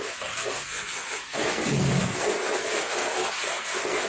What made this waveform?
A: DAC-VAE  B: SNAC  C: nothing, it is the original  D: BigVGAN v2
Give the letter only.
B